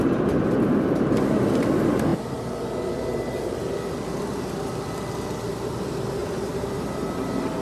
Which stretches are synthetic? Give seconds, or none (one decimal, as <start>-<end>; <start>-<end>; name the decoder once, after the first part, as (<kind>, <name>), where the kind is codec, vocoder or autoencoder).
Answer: 6.2-6.8 (vocoder, BigVGAN v2)